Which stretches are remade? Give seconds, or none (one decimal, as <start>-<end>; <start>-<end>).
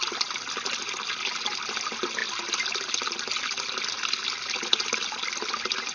none